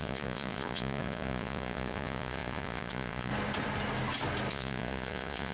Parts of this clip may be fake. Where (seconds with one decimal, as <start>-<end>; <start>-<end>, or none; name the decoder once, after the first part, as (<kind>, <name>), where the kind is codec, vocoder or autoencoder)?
0.0-3.3 (vocoder, Vocos); 4.5-5.5